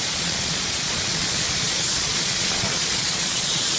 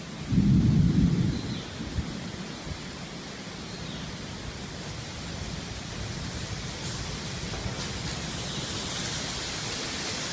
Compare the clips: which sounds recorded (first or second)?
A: second